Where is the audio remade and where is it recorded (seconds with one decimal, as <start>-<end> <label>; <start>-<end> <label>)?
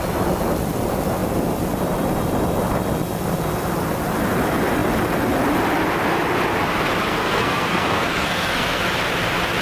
0.0-7.1 recorded; 7.1-8.8 remade; 8.8-9.6 recorded